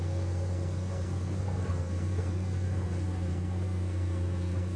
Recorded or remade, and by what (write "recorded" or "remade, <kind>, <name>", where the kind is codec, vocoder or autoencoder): remade, codec, SNAC